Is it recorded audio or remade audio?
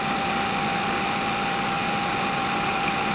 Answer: recorded